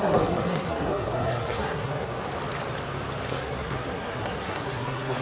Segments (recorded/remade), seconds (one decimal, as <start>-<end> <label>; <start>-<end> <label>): 0.0-2.1 remade; 2.1-3.3 recorded; 3.3-5.2 remade

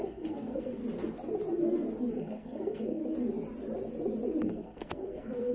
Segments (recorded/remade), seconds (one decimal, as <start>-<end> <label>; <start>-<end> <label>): 0.0-0.8 remade; 0.8-2.1 recorded; 2.1-3.0 remade; 3.0-4.4 recorded; 4.4-5.5 remade

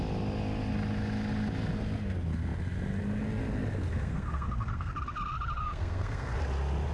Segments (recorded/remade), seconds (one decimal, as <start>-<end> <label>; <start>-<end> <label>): 0.0-3.9 recorded; 3.9-4.9 remade; 4.9-5.6 recorded; 5.6-6.4 remade; 6.4-6.9 recorded

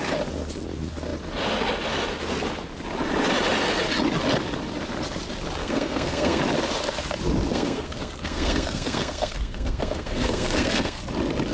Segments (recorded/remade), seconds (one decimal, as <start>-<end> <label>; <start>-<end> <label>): 0.0-5.6 recorded; 5.6-6.4 remade; 6.4-7.5 recorded; 7.5-11.0 remade; 11.0-11.5 recorded

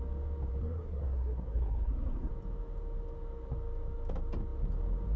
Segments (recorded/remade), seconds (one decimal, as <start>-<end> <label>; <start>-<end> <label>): 0.0-0.6 recorded; 0.6-2.3 remade; 2.3-5.2 recorded

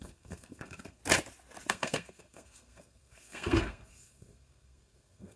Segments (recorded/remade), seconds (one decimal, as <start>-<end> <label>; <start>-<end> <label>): 0.0-1.0 remade; 1.0-1.7 recorded; 1.7-5.4 remade